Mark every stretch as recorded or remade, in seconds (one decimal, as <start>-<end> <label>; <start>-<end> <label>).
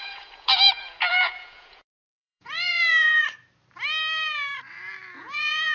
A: 0.0-3.2 remade; 3.2-5.2 recorded; 5.2-5.7 remade